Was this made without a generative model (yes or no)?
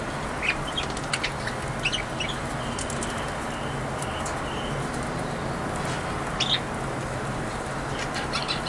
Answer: yes